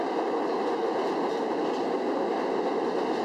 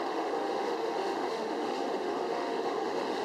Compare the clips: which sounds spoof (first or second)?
second